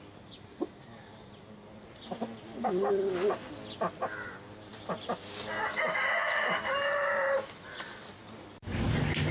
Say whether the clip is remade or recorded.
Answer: recorded